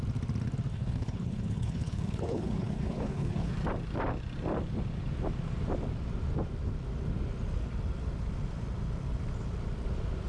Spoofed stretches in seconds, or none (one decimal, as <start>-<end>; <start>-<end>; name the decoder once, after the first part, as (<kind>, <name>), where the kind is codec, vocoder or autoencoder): 0.7-3.5 (codec, HILCodec)